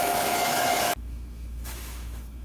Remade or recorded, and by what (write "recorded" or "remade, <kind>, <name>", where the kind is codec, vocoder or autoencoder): remade, autoencoder, DAC-VAE